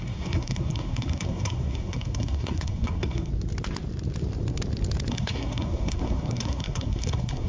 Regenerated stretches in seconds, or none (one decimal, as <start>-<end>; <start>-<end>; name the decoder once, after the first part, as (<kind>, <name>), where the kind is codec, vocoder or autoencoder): 0.0-3.3 (codec, SNAC); 5.1-7.5